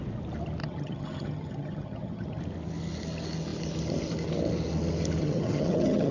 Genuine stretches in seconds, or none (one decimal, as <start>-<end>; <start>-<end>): 0.0-0.6; 2.4-5.2